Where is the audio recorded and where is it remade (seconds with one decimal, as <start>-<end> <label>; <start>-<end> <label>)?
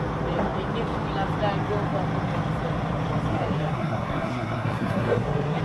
0.0-3.3 recorded; 3.3-5.6 remade